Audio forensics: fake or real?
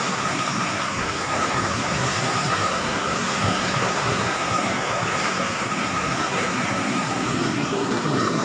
fake